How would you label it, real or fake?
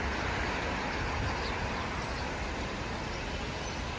real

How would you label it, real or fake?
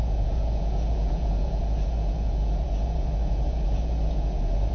fake